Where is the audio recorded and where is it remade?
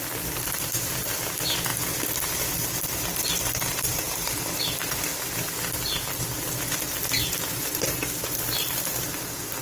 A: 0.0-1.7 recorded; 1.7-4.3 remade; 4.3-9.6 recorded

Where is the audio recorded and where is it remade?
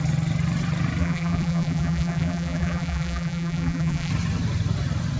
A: 0.0-1.0 recorded; 1.0-4.1 remade; 4.1-5.2 recorded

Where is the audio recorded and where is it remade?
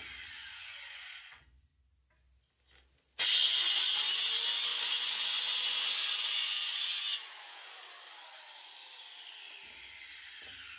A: 0.0-0.4 recorded; 0.4-1.6 remade; 1.6-3.4 recorded; 3.4-4.0 remade; 4.0-4.7 recorded; 4.7-7.8 remade; 7.8-10.8 recorded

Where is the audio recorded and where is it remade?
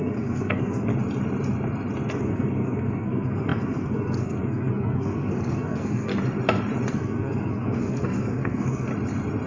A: 0.0-0.9 remade; 0.9-2.1 recorded; 2.1-6.1 remade; 6.1-6.9 recorded; 6.9-8.9 remade; 8.9-9.5 recorded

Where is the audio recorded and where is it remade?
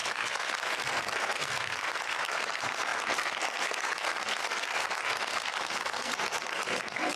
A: 0.0-7.2 remade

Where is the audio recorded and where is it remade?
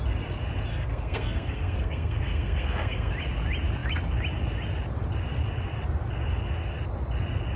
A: 0.0-0.7 recorded; 0.7-3.1 remade; 3.1-7.6 recorded